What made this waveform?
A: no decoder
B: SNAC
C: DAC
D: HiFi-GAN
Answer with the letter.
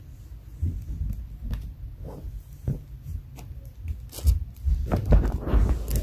A